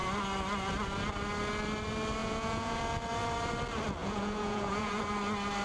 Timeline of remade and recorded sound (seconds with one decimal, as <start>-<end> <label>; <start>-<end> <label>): 0.0-2.2 recorded; 2.2-2.8 remade; 2.8-4.0 recorded; 4.0-5.0 remade; 5.0-5.6 recorded